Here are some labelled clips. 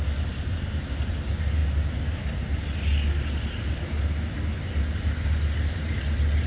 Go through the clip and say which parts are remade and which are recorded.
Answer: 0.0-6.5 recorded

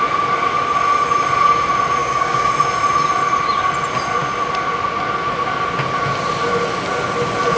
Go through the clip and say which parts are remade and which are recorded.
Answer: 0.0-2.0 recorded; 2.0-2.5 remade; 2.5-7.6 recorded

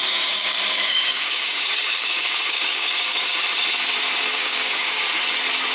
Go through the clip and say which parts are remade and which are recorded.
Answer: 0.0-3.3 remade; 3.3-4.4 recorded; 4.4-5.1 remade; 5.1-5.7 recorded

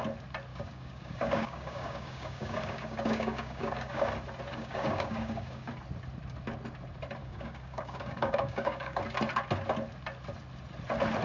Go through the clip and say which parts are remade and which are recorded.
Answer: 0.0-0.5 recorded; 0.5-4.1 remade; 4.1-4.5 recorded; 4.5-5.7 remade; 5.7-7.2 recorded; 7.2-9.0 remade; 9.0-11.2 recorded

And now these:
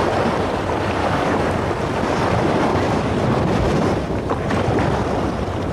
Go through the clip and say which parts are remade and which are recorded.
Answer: 0.0-1.0 recorded; 1.0-1.5 remade; 1.5-2.7 recorded; 2.7-3.2 remade; 3.2-5.7 recorded

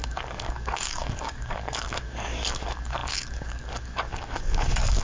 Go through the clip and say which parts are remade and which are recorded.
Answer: 0.0-5.0 remade